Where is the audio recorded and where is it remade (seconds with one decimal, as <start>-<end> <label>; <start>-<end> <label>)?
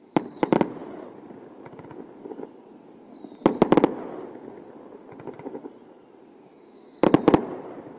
0.0-6.5 recorded; 6.5-7.1 remade; 7.1-8.0 recorded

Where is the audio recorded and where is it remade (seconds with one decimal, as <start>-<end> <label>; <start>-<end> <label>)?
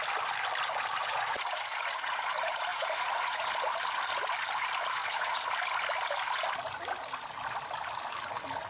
0.0-1.0 recorded; 1.0-2.3 remade; 2.3-2.7 recorded; 2.7-3.5 remade; 3.5-5.0 recorded; 5.0-5.5 remade; 5.5-8.7 recorded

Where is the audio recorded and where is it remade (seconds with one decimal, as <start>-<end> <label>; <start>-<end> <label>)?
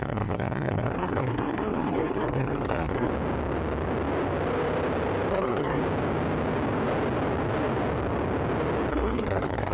0.0-3.1 remade; 3.1-5.3 recorded; 5.3-5.8 remade; 5.8-8.9 recorded; 8.9-9.7 remade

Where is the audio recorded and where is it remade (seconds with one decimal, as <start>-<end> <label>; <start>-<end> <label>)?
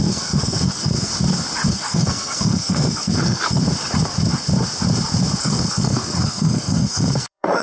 0.0-1.1 remade; 1.1-1.7 recorded; 1.7-3.6 remade; 3.6-5.4 recorded; 5.4-7.6 remade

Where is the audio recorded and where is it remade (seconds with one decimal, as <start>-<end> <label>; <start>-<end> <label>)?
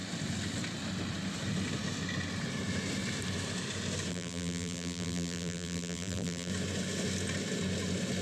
0.0-4.1 recorded; 4.1-6.5 remade; 6.5-8.2 recorded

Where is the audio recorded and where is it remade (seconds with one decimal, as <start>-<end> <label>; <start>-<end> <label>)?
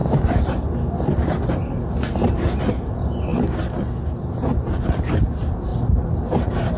0.0-2.6 recorded; 2.6-3.3 remade; 3.3-4.1 recorded; 4.1-5.7 remade; 5.7-6.8 recorded